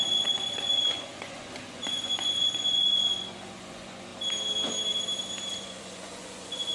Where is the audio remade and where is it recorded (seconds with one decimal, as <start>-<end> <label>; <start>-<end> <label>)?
0.0-4.1 remade; 4.1-5.5 recorded; 5.5-6.7 remade